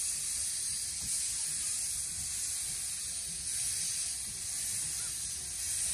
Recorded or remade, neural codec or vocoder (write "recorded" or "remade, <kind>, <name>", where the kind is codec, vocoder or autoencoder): recorded